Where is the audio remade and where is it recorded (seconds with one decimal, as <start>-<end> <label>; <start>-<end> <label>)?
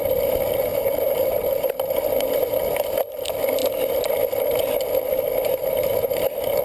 0.0-0.7 recorded; 0.7-1.7 remade; 1.7-6.6 recorded